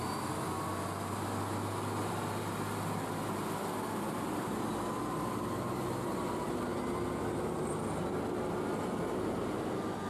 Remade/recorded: recorded